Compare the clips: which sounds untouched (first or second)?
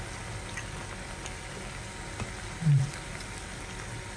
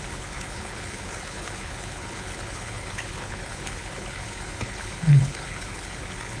first